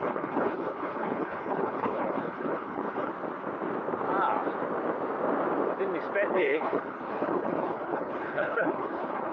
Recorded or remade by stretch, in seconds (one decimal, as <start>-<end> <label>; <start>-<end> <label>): 0.0-3.1 remade; 3.1-6.3 recorded; 6.3-9.3 remade